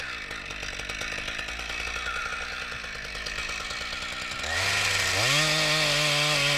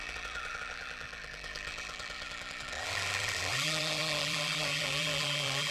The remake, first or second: second